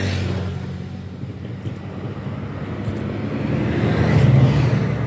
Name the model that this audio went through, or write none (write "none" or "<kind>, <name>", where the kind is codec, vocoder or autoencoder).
none